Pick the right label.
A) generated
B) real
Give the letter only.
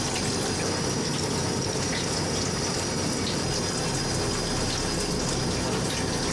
B